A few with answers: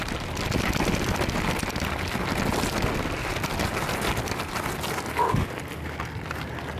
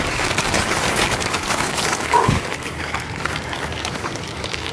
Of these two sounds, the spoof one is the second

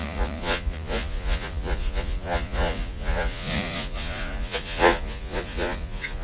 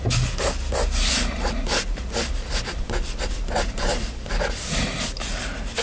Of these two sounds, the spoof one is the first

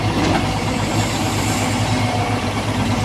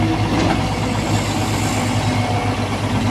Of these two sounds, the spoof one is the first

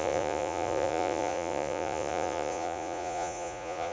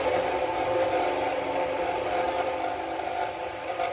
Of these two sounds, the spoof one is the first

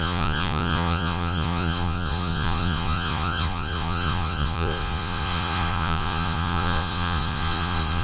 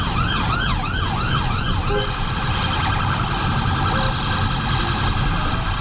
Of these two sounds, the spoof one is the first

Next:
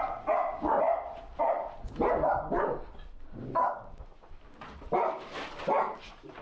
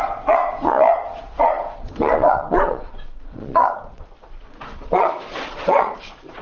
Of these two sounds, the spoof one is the second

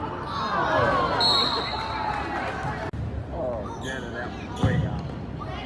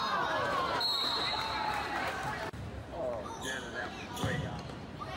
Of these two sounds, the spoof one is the second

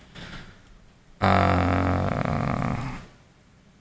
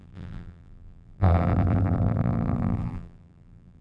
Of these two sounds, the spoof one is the second